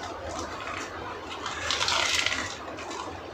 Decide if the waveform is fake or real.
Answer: real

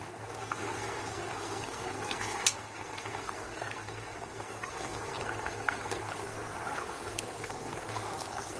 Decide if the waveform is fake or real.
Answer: fake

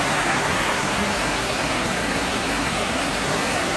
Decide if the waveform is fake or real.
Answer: fake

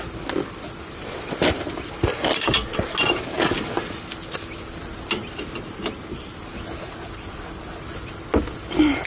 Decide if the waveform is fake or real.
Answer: real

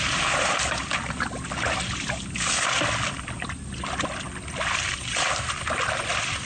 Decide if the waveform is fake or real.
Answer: real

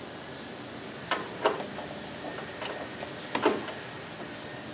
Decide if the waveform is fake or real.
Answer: real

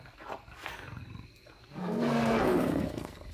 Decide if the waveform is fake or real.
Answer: fake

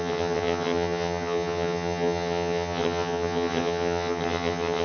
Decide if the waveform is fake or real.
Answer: fake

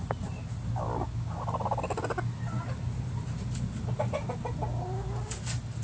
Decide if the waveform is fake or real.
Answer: real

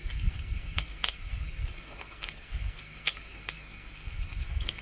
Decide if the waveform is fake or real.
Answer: fake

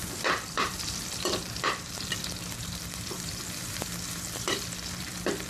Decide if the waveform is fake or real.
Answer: fake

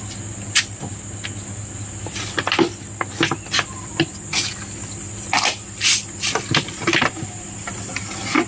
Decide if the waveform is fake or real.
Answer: real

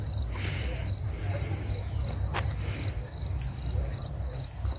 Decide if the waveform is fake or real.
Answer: real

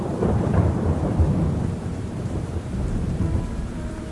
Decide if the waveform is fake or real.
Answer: fake